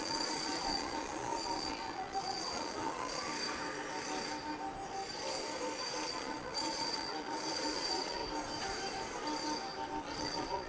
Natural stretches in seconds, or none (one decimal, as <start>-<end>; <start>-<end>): 3.3-5.8; 8.2-10.0